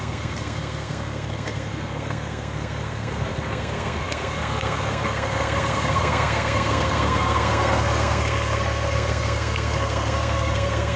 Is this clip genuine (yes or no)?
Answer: no